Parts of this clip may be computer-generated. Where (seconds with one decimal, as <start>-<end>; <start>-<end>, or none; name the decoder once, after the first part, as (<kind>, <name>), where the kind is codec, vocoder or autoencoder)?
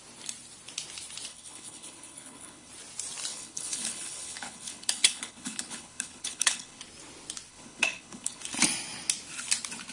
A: 1.3-2.7 (codec, HILCodec); 3.3-6.8; 7.5-8.4